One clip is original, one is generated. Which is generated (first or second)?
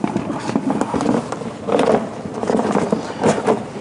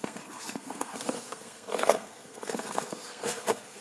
second